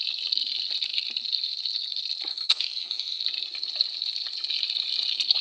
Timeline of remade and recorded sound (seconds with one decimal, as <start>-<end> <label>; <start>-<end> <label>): 0.0-2.3 recorded; 2.3-3.2 remade; 3.2-5.4 recorded